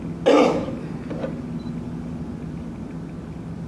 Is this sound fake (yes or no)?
no